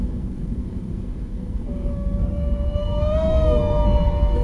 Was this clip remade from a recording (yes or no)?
yes